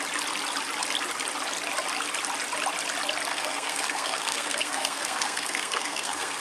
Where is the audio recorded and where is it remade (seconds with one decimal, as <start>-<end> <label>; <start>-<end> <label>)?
0.0-3.3 recorded; 3.3-6.4 remade